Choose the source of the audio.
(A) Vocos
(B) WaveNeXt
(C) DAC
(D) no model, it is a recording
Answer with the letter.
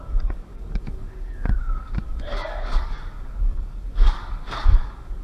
C